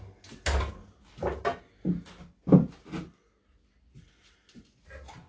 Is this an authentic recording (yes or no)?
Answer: yes